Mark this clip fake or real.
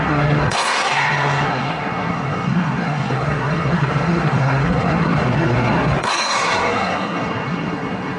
fake